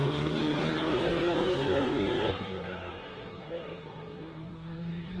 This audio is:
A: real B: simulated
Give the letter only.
B